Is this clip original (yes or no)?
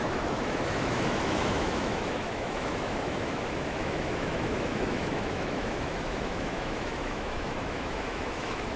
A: no